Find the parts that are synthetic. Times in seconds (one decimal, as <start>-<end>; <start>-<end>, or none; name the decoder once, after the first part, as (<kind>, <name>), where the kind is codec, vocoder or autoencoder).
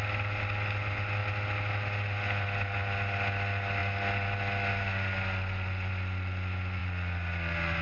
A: none